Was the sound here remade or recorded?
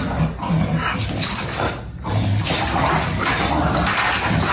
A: recorded